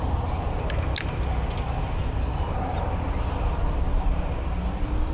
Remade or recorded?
recorded